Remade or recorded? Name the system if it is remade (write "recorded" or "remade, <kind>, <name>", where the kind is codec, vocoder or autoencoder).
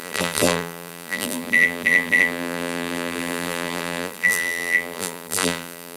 remade, vocoder, BigVGAN v2